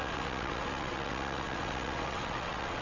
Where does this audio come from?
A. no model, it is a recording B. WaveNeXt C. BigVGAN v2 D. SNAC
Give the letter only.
B